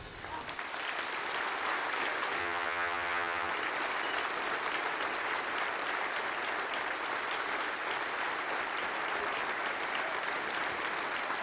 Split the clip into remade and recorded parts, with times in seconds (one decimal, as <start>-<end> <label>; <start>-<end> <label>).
0.0-2.4 recorded; 2.4-3.5 remade; 3.5-11.4 recorded